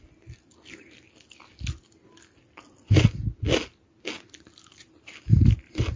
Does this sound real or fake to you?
real